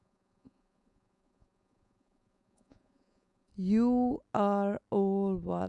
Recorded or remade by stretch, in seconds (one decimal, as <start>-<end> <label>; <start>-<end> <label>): 0.0-3.5 remade; 3.5-5.7 recorded